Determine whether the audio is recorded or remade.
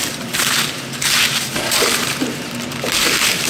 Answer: remade